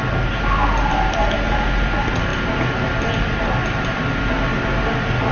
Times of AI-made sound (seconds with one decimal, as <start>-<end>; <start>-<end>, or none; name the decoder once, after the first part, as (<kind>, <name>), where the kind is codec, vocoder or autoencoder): none